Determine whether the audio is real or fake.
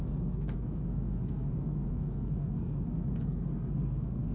fake